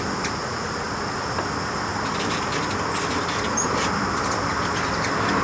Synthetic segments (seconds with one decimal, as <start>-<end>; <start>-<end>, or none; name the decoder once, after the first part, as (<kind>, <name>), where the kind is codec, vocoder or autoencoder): 0.4-1.0 (vocoder, Vocos)